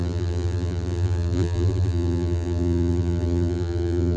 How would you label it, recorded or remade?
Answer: remade